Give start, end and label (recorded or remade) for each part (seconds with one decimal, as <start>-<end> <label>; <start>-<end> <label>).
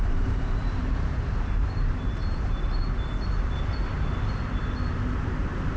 0.0-2.2 remade; 2.2-5.8 recorded